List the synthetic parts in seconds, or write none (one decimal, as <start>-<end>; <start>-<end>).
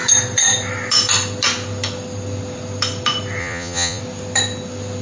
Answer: 3.4-4.0